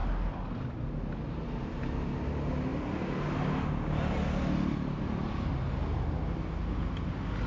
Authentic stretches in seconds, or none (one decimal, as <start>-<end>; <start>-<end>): 0.8-7.5

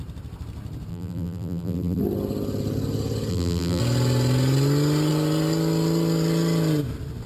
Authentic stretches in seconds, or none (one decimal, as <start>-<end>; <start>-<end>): 0.0-0.9; 2.0-3.3; 3.8-7.3

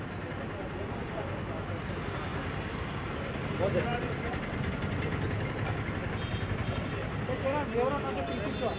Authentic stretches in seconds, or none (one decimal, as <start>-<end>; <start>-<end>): 0.0-2.3; 3.2-3.9; 4.7-6.3; 7.3-8.8

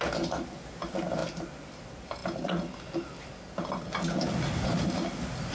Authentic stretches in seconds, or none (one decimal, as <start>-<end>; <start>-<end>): 0.0-5.5

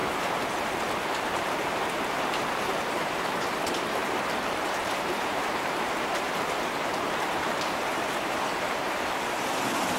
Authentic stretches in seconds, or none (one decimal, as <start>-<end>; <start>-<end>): none

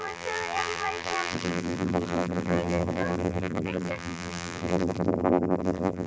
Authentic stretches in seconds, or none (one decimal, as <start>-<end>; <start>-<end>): none

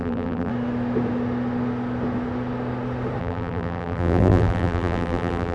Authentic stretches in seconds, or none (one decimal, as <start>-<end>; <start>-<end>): 0.5-3.2